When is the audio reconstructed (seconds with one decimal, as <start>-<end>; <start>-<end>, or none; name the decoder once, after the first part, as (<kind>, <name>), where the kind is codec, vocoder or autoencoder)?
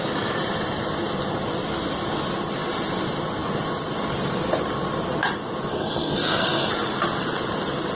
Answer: 5.7-6.7 (codec, SNAC)